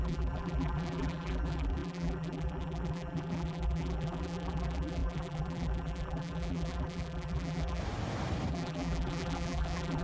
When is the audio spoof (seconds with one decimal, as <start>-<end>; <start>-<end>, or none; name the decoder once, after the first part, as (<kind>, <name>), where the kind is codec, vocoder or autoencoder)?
0.0-7.8 (vocoder, BigVGAN v2); 8.5-10.0